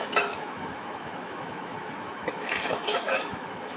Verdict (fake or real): fake